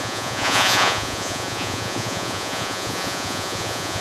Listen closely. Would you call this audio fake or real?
fake